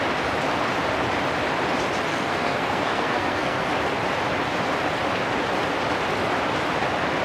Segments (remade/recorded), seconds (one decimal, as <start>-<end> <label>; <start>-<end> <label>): 0.0-2.1 recorded; 2.1-3.7 remade; 3.7-7.2 recorded

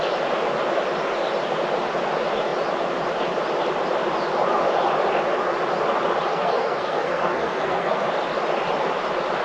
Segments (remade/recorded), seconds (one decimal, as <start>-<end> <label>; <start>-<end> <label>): 0.0-6.3 recorded; 6.3-8.1 remade; 8.1-9.4 recorded

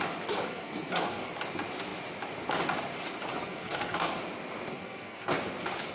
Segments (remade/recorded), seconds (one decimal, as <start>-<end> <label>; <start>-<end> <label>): 0.0-0.5 recorded; 0.5-1.3 remade; 1.3-3.3 recorded; 3.3-4.2 remade; 4.2-4.7 recorded; 4.7-5.3 remade; 5.3-5.9 recorded

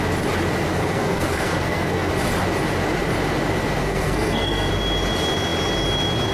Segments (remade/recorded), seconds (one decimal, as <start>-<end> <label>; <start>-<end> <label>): 0.0-0.7 recorded; 0.7-2.1 remade; 2.1-3.8 recorded; 3.8-4.7 remade; 4.7-6.3 recorded